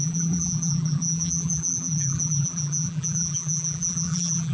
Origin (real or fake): fake